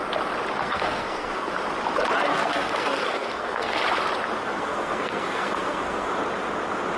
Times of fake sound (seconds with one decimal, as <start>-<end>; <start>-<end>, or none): 0.6-1.5; 2.3-3.8; 4.4-6.1